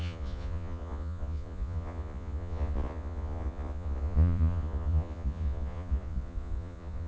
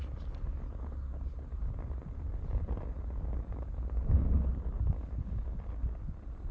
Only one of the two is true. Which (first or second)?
second